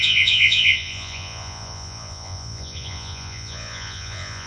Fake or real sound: fake